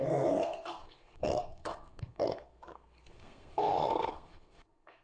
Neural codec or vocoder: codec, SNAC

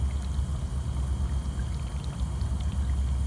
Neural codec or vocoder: none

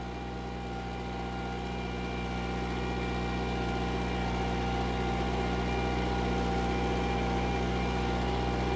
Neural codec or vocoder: none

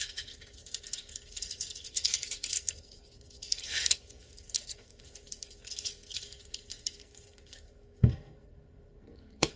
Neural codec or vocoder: codec, SNAC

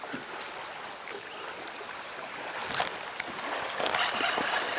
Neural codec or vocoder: none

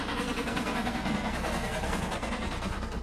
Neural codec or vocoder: codec, SNAC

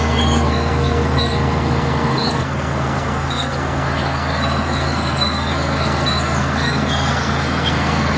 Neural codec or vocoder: codec, SNAC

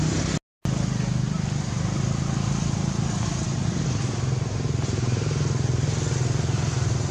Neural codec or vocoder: none